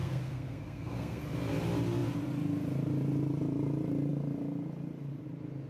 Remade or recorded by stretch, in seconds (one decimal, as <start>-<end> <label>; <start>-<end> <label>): 0.0-1.2 remade; 1.2-5.7 recorded